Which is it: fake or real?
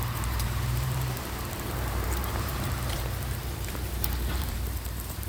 fake